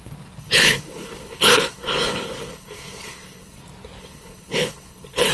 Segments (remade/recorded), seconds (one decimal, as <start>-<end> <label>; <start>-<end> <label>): 0.0-0.4 recorded; 0.4-3.6 remade; 3.6-4.0 recorded; 4.0-5.3 remade